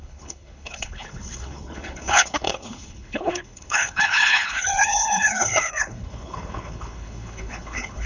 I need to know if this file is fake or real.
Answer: fake